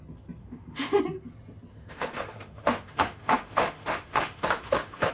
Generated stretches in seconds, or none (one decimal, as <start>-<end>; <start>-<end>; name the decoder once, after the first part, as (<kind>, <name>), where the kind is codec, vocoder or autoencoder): 0.4-1.0 (autoencoder, DAC-VAE); 1.7-5.1